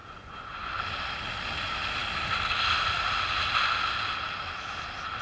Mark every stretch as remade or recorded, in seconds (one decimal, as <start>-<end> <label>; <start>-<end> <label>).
0.0-0.7 remade; 0.7-5.2 recorded